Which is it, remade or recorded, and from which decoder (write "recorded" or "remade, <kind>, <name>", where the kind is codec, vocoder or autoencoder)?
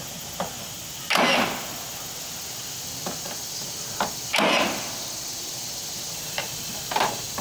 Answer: recorded